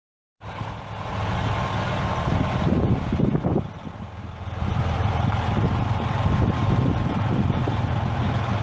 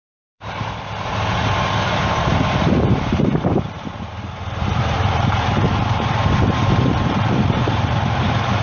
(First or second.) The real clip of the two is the first